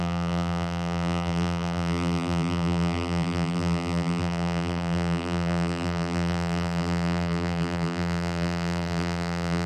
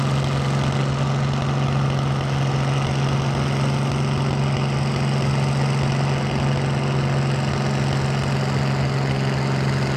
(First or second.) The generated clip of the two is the first